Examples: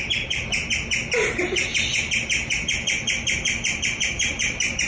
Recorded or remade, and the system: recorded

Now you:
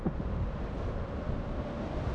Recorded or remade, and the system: recorded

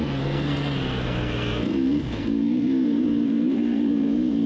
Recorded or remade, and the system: remade, codec, SNAC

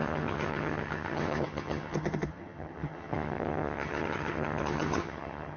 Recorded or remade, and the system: remade, vocoder, HiFi-GAN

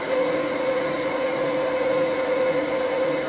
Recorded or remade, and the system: remade, vocoder, Vocos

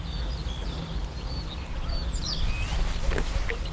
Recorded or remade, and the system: recorded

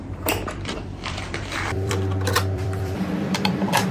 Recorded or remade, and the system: remade, vocoder, BigVGAN v2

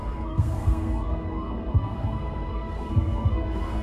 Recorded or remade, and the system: remade, codec, SNAC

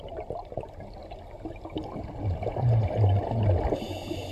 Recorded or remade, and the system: recorded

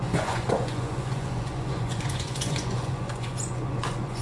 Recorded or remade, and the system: remade, vocoder, Vocos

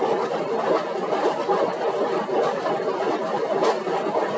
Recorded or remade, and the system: remade, vocoder, BigVGAN v2